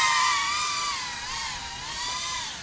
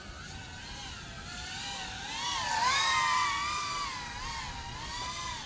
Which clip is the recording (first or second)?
second